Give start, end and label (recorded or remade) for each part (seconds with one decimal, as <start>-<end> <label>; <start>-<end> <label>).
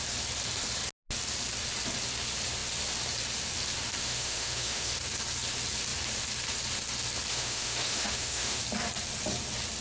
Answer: 0.0-4.0 recorded; 4.0-4.9 remade; 4.9-7.3 recorded; 7.3-8.6 remade; 8.6-9.8 recorded